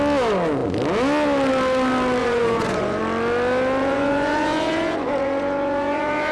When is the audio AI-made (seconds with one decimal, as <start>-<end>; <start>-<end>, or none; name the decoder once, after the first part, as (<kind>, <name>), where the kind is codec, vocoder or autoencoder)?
2.2-3.0 (vocoder, Vocos); 3.8-6.3